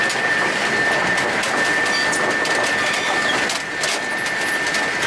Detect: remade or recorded recorded